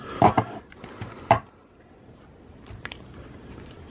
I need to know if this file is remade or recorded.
recorded